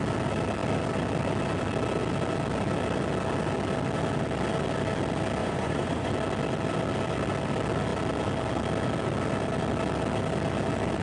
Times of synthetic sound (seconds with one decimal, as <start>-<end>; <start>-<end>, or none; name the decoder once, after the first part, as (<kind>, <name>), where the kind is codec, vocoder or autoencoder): 5.4-6.1 (vocoder, Vocos)